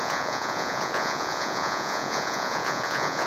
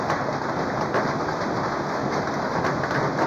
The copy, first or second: first